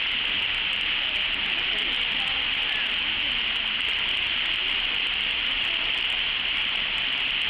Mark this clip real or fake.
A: real